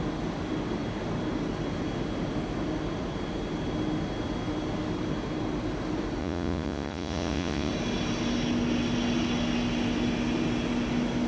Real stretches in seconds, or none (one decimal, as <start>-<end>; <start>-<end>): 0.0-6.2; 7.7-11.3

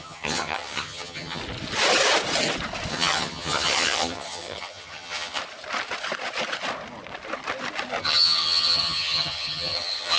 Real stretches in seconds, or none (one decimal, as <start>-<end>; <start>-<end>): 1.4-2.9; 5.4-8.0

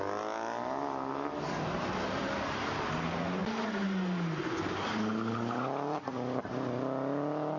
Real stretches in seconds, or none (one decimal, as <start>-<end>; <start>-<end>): 0.0-7.6

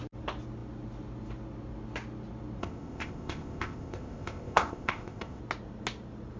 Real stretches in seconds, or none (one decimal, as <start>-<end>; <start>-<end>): 0.0-2.6; 5.4-6.4

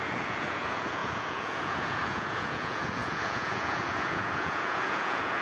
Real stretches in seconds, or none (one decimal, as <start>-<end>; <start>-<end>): none